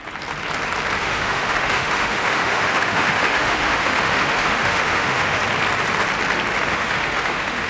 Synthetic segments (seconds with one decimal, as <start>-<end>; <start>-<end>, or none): 1.0-5.4; 6.7-7.7